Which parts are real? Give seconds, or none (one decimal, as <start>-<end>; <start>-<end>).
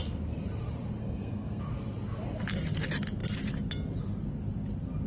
0.0-1.0; 1.6-5.1